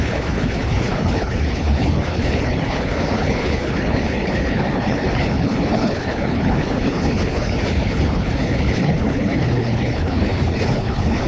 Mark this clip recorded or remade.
remade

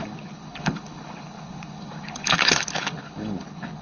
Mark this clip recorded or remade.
remade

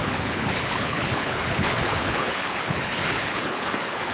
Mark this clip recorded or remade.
remade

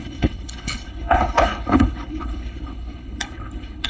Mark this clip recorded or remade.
remade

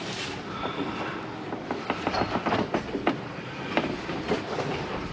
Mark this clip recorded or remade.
recorded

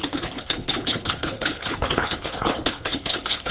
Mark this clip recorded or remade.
remade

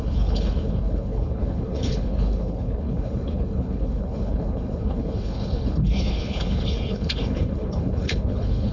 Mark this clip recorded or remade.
remade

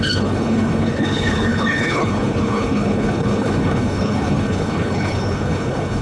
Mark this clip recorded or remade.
remade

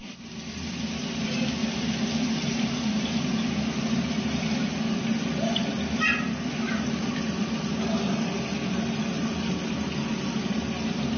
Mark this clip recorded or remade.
recorded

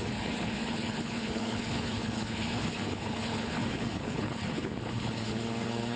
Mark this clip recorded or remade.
remade